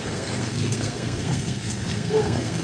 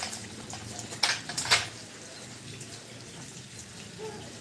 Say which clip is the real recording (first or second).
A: second